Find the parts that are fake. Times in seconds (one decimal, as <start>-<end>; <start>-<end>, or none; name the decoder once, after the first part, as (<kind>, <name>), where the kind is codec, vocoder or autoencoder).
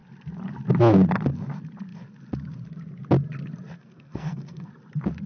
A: 3.8-4.7 (codec, SNAC)